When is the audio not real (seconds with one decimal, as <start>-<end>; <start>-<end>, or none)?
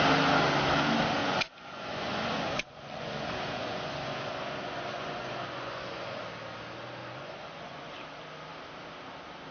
1.2-6.2; 7.0-7.9